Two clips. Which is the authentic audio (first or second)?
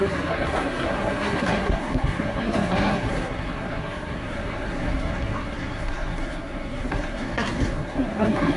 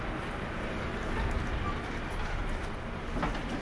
second